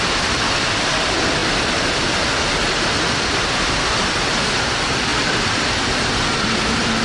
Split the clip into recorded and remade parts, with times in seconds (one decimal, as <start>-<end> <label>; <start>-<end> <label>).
0.0-5.1 recorded; 5.1-5.7 remade; 5.7-7.0 recorded